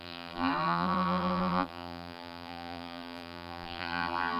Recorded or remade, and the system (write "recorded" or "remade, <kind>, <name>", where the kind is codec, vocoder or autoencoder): remade, vocoder, BigVGAN v2